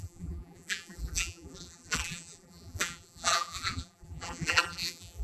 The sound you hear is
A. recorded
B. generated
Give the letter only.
B